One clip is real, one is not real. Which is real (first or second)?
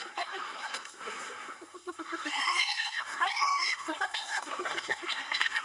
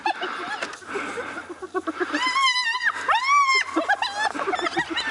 second